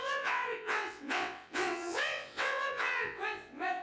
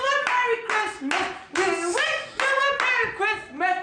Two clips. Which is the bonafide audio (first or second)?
second